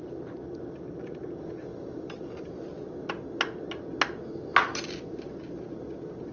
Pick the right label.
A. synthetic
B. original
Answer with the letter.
B